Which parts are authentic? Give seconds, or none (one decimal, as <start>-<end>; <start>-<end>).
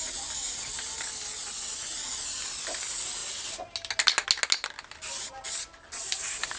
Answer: 0.0-6.6